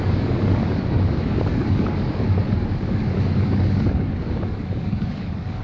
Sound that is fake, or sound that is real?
fake